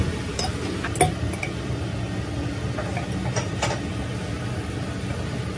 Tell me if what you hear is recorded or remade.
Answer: recorded